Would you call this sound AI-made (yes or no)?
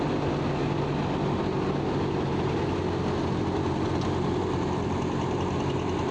no